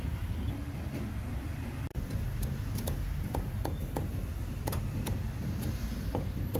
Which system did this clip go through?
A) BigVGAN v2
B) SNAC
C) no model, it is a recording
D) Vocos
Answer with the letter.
C